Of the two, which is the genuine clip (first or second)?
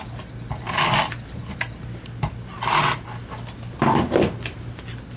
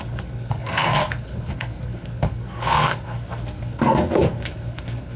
first